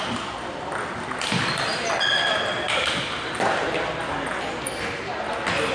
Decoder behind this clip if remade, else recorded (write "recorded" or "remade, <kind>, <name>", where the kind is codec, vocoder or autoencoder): recorded